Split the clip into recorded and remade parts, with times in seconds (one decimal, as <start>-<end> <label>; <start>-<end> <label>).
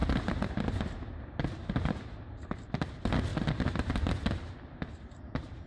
0.0-5.7 recorded